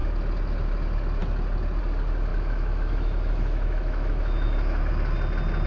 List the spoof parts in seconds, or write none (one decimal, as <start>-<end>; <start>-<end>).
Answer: 2.3-4.9